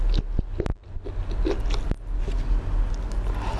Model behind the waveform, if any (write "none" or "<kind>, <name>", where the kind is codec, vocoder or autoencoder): none